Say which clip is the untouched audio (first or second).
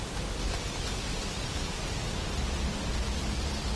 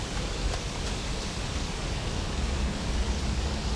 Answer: first